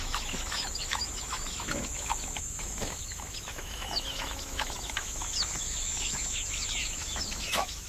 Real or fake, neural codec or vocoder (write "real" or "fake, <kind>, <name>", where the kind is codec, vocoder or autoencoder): fake, autoencoder, DAC-VAE